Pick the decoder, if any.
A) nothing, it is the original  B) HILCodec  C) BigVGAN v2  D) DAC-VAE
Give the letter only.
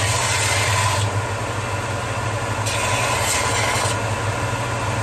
A